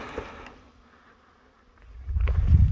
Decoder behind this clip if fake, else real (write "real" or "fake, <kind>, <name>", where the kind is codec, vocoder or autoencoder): real